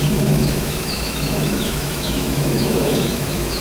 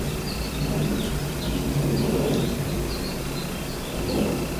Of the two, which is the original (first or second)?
second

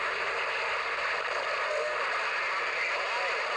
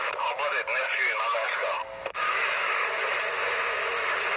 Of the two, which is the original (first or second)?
first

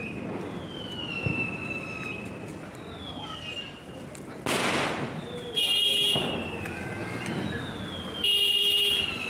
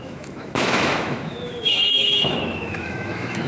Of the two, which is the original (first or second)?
first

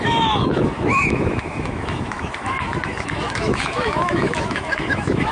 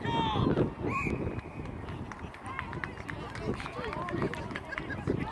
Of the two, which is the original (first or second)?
second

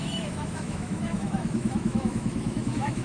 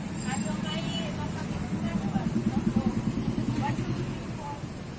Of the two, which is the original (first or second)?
second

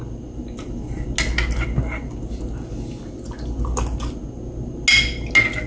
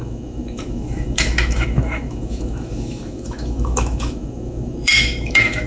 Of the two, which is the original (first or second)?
first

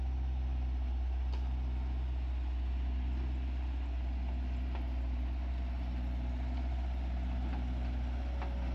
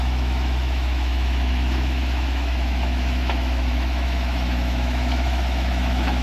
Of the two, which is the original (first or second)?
first